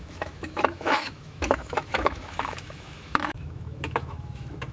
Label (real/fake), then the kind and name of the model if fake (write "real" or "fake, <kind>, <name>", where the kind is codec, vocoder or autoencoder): fake, autoencoder, DAC-VAE